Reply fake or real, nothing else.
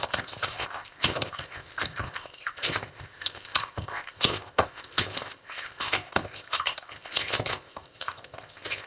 fake